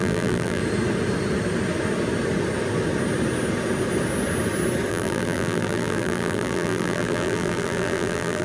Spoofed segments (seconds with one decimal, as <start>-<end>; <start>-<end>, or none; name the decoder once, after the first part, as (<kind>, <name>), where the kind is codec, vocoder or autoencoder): 0.0-0.6 (vocoder, BigVGAN v2); 4.9-8.4